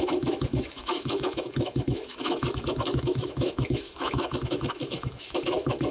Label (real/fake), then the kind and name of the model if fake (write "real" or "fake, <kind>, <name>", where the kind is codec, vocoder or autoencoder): fake, autoencoder, DAC-VAE